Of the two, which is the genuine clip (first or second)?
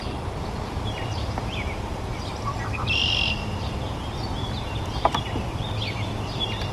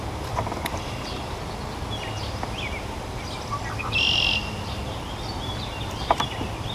second